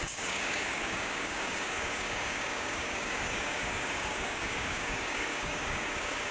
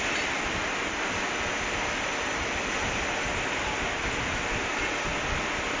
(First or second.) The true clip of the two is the second